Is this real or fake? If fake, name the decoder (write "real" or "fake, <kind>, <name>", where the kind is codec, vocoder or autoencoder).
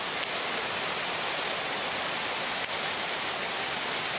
real